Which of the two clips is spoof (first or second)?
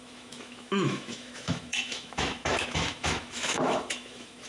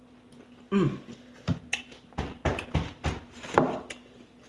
first